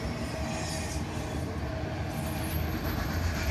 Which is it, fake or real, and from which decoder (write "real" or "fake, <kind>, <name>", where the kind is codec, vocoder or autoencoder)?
real